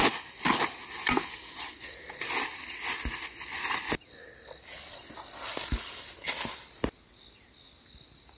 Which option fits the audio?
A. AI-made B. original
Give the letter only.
B